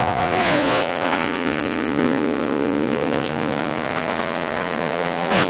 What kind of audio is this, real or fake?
fake